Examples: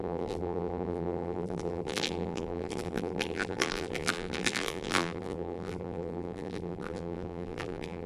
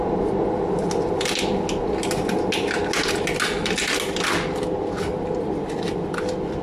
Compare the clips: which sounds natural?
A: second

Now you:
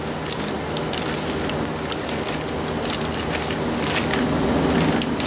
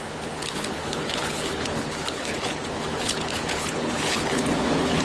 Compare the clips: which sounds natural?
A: first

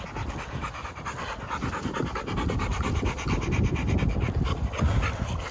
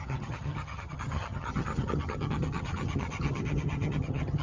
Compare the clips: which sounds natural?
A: first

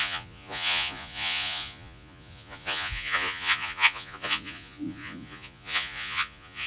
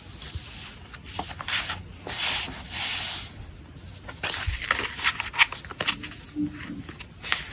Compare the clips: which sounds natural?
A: second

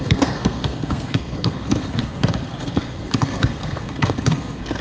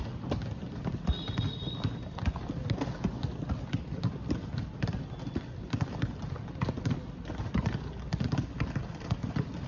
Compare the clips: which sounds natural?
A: second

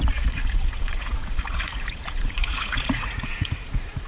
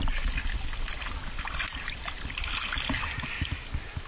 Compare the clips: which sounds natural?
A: second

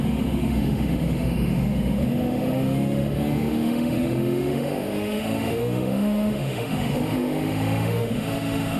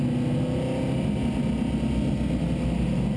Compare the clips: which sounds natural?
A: second